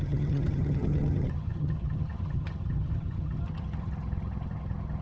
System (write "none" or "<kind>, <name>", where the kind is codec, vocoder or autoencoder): vocoder, HiFi-GAN